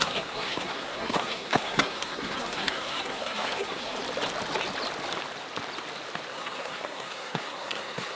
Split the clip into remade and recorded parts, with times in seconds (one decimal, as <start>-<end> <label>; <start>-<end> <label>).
0.0-4.0 remade; 4.0-6.3 recorded; 6.3-8.2 remade